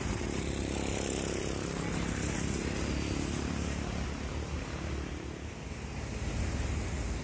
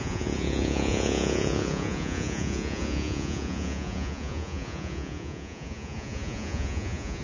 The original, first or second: first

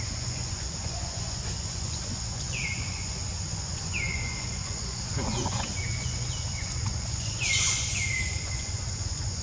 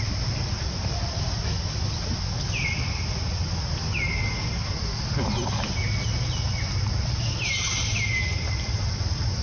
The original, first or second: second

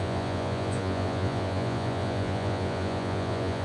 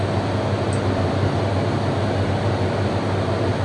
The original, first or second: second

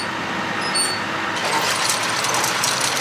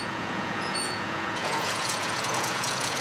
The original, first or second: first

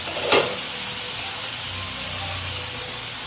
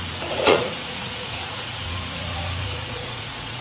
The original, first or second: first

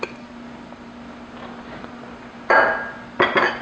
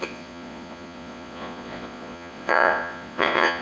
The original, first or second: first